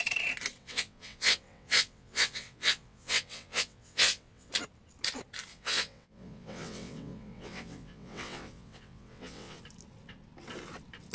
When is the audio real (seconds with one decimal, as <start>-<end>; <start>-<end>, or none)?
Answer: 0.0-0.6; 4.5-5.5; 9.6-11.1